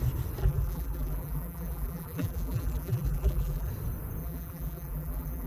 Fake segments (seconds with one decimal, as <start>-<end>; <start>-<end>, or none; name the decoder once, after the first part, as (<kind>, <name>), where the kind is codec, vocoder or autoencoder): 0.4-3.7 (vocoder, BigVGAN v2); 4.2-5.5